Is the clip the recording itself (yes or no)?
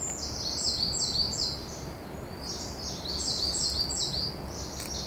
yes